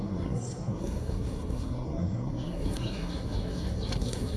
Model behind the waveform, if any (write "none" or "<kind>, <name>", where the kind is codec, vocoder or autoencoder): codec, SNAC